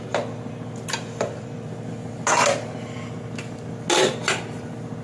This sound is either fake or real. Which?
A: real